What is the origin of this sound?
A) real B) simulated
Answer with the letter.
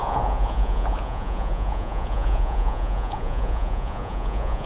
B